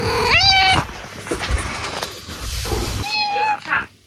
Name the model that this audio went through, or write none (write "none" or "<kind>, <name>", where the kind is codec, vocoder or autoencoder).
vocoder, BigVGAN v2